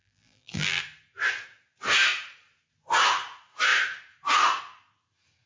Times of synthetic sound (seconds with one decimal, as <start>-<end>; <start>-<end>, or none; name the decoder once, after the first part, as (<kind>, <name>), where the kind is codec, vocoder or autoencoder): 0.0-0.8 (vocoder, BigVGAN v2)